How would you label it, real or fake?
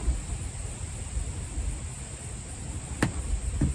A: real